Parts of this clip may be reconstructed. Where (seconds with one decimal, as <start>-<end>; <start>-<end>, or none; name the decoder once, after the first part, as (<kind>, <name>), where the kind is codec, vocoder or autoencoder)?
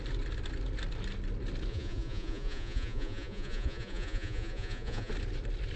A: 1.7-5.1 (vocoder, Vocos)